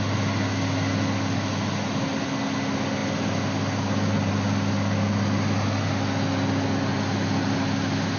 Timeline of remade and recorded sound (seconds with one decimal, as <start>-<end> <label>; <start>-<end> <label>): 0.0-8.2 recorded